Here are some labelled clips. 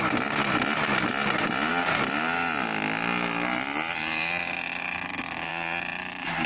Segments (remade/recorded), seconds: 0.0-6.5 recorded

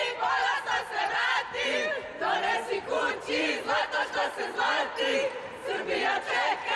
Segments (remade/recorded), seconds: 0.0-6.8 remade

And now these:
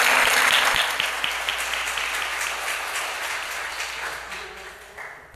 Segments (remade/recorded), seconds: 0.0-5.4 recorded